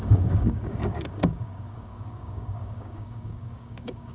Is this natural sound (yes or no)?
no